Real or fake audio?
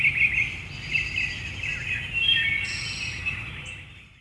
real